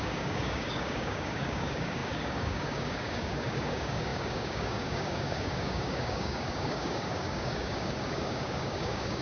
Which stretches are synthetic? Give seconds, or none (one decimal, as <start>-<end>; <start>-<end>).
0.0-9.2